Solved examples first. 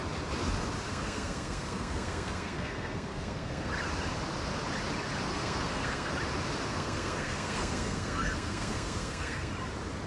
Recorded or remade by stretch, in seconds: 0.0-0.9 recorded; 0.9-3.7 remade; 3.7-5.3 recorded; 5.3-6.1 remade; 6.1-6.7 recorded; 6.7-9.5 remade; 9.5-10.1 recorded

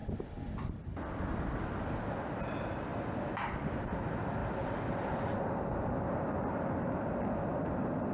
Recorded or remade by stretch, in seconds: 0.0-1.3 remade; 1.3-4.4 recorded; 4.4-5.1 remade; 5.1-8.1 recorded

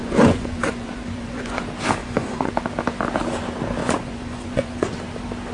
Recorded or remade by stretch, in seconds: 0.0-1.6 remade; 1.6-2.0 recorded; 2.0-2.5 remade; 2.5-3.8 recorded; 3.8-4.9 remade; 4.9-5.5 recorded

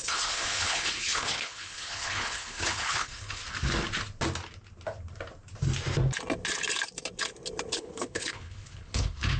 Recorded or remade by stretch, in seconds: 0.0-3.4 remade; 3.4-7.7 recorded; 7.7-9.4 remade

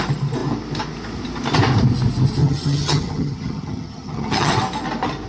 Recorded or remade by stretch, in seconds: 0.0-2.4 recorded; 2.4-4.5 remade; 4.5-5.3 recorded

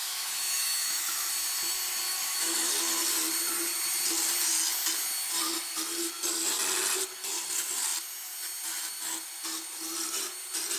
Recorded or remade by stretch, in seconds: 0.0-1.3 remade; 1.3-2.1 recorded; 2.1-2.7 remade; 2.7-10.8 recorded

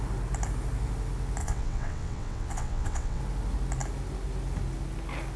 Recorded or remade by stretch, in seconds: 0.0-1.4 recorded; 1.4-3.2 remade; 3.2-5.4 recorded